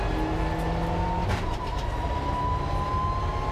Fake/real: real